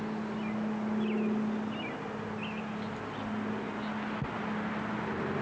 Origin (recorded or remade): recorded